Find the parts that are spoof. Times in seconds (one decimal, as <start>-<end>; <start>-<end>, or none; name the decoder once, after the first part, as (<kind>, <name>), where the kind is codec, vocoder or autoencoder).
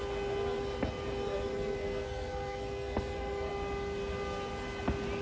1.5-3.5 (codec, SNAC)